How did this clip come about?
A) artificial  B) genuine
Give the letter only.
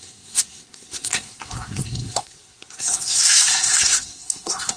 A